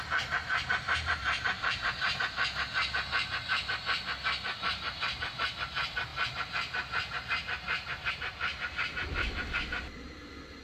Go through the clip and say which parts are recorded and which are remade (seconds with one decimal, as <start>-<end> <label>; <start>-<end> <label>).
0.0-0.4 recorded; 0.4-2.2 remade; 2.2-4.7 recorded; 4.7-5.4 remade; 5.4-10.6 recorded